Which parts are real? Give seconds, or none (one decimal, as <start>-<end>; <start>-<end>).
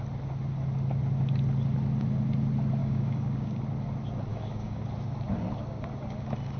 0.0-2.8; 3.6-4.3; 4.8-6.6